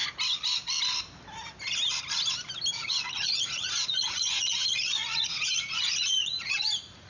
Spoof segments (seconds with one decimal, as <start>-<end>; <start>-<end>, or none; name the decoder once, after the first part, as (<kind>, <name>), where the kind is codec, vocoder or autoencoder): 2.8-7.1 (vocoder, Vocos)